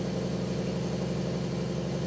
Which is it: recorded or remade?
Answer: recorded